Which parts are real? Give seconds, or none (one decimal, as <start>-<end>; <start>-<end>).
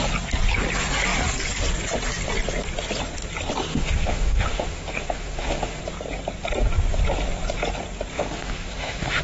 0.0-3.7; 5.8-8.1